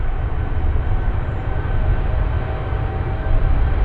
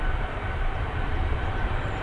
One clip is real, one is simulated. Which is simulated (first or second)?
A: second